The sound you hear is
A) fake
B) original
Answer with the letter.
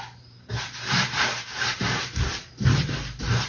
A